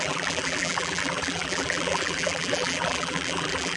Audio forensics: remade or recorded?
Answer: remade